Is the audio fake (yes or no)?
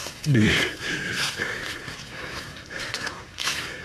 yes